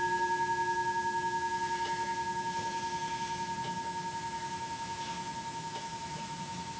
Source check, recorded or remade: remade